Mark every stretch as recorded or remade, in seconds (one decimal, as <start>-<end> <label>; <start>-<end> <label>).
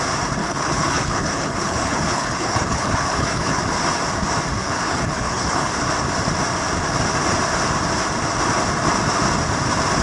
0.0-0.4 recorded; 0.4-3.6 remade; 3.6-4.6 recorded; 4.6-5.7 remade; 5.7-10.0 recorded